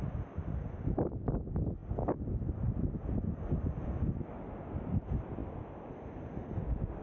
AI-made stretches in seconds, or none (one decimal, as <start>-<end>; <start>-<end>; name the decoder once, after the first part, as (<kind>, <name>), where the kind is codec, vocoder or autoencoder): none